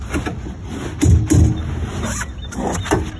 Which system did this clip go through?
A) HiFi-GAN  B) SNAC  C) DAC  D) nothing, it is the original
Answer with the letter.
D